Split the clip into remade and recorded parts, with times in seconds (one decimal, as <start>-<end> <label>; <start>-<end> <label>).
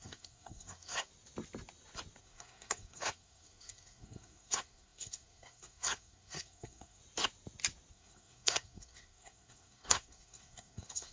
0.0-1.1 remade; 1.1-2.2 recorded; 2.2-7.0 remade; 7.0-7.9 recorded; 7.9-11.1 remade